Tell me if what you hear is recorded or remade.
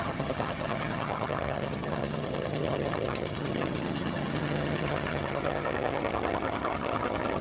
remade